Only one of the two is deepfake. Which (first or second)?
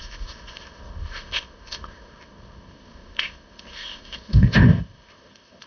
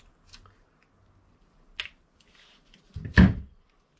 first